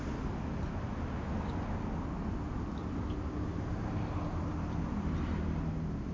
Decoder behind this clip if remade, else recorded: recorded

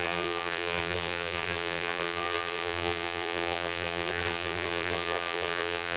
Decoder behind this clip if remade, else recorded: remade, vocoder, BigVGAN v2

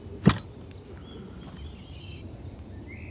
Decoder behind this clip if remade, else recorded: recorded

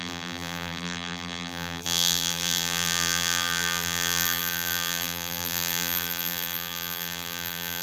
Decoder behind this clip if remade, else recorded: remade, vocoder, BigVGAN v2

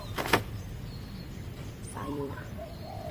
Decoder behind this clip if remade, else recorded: remade, vocoder, BigVGAN v2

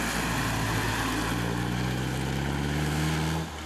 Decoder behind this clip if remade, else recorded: recorded